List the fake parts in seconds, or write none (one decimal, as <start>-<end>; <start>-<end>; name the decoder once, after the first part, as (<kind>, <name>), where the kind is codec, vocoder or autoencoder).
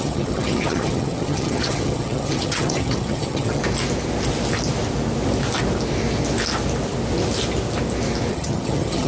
0.0-3.6 (vocoder, HiFi-GAN); 8.3-9.1